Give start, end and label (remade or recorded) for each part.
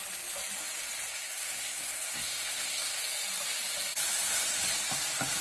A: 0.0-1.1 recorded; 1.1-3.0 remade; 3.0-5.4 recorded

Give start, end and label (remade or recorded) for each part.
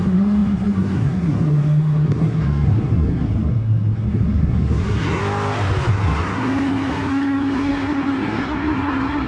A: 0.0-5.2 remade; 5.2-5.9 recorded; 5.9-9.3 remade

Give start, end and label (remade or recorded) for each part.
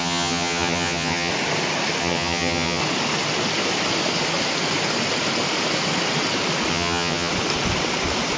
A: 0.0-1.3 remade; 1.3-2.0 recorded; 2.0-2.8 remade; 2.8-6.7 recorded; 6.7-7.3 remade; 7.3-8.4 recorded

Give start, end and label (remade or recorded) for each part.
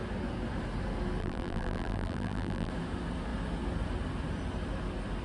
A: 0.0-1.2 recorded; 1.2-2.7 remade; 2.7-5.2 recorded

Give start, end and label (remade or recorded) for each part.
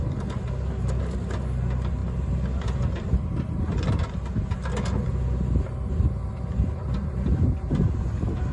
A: 0.0-8.5 recorded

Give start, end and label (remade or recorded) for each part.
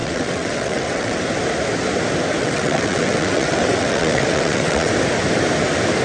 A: 0.0-1.2 remade; 1.2-2.4 recorded; 2.4-4.9 remade; 4.9-6.0 recorded